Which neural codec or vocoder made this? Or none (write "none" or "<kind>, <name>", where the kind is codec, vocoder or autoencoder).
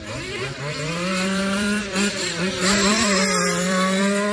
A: vocoder, BigVGAN v2